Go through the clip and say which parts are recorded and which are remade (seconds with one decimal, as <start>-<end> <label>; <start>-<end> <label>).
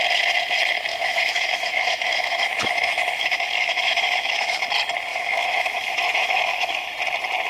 0.0-0.9 recorded; 0.9-4.6 remade; 4.6-5.1 recorded; 5.1-6.9 remade; 6.9-7.5 recorded